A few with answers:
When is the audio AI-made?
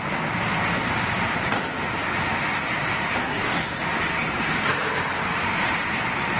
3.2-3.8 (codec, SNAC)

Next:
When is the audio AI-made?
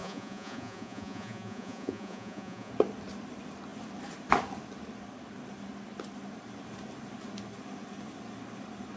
0.0-2.7 (vocoder, Vocos)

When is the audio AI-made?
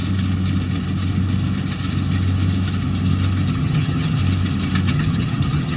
3.5-4.2 (vocoder, HiFi-GAN); 4.9-5.8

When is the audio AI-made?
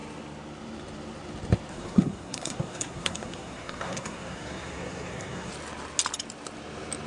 1.7-5.5 (codec, SNAC)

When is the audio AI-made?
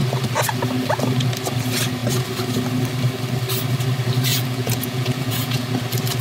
4.3-5.7 (vocoder, Vocos)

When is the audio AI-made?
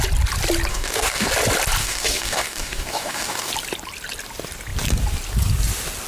0.7-1.3 (codec, DAC); 1.8-3.5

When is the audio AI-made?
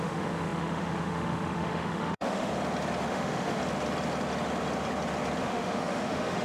0.0-2.5 (autoencoder, DAC-VAE); 3.1-3.6; 5.4-6.4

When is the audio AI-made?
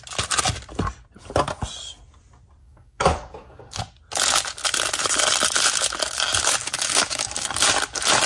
2.6-3.8 (codec, DAC); 6.6-7.5